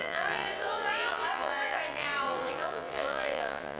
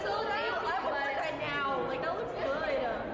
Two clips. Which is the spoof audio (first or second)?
first